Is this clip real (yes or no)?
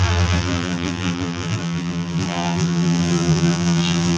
no